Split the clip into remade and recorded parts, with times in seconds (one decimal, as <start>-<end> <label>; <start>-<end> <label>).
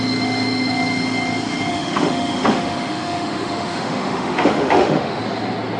0.0-1.7 recorded; 1.7-5.2 remade; 5.2-5.8 recorded